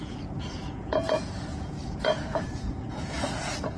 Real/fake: fake